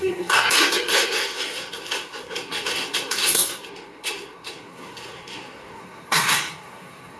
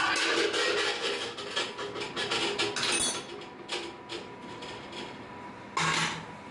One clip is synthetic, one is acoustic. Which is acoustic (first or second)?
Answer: second